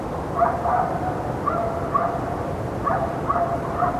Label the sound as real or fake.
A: real